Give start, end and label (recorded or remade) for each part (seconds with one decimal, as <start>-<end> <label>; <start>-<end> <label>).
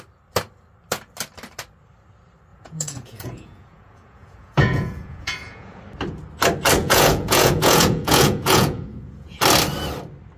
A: 0.0-2.5 recorded; 2.5-5.8 remade; 5.8-6.8 recorded; 6.8-9.4 remade; 9.4-10.4 recorded